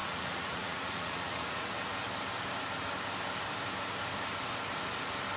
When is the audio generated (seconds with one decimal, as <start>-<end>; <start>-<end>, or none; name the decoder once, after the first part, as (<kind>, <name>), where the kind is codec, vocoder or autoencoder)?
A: 0.0-1.7 (vocoder, Vocos)